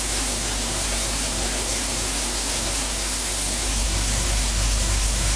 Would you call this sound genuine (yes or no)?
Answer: no